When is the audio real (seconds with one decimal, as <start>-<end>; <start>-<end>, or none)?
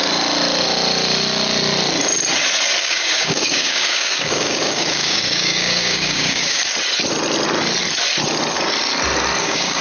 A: 0.0-2.8; 6.6-9.4